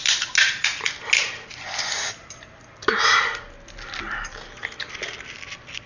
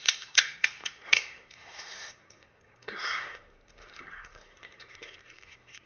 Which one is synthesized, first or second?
second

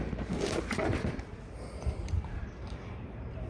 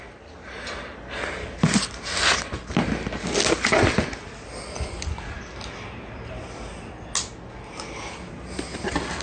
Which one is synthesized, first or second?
first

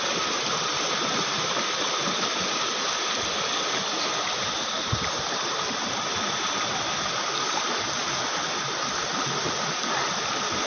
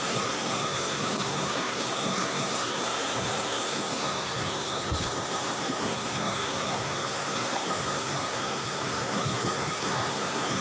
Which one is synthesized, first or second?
second